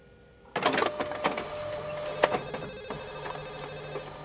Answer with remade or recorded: recorded